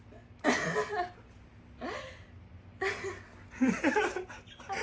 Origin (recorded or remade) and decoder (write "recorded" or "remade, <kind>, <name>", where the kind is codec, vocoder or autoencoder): recorded